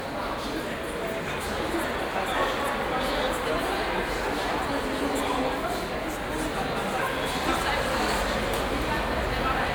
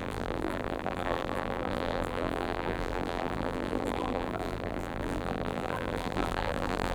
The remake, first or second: second